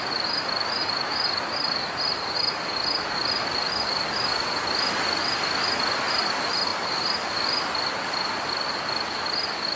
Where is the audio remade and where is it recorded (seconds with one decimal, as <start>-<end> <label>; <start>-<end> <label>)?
0.0-9.8 recorded